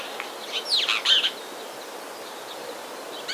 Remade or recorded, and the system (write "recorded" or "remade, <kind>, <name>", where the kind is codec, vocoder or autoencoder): recorded